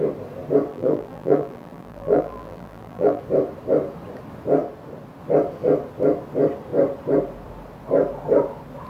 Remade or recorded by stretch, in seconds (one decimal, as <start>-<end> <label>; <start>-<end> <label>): 0.0-0.7 recorded; 0.7-3.2 remade; 3.2-8.9 recorded